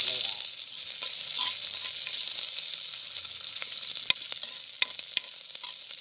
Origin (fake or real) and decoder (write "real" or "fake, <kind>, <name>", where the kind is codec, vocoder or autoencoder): real